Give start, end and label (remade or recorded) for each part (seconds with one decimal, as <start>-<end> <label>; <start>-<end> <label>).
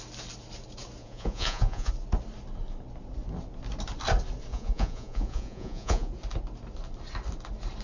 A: 0.0-1.0 recorded; 1.0-1.9 remade; 1.9-4.5 recorded; 4.5-6.1 remade; 6.1-7.8 recorded